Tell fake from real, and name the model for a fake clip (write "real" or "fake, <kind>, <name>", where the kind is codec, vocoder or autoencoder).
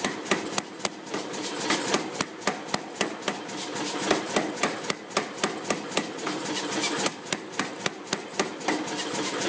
real